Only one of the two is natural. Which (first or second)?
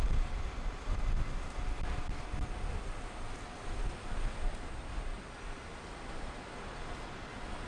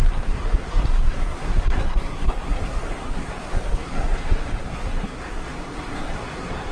first